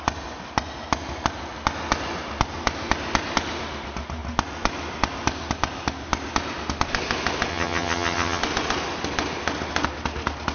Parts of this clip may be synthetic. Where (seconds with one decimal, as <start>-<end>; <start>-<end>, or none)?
7.5-8.4